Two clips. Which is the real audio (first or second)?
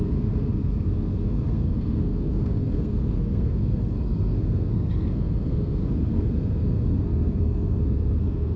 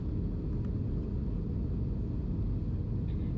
second